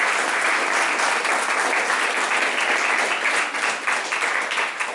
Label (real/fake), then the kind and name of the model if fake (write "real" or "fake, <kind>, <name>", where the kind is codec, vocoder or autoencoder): real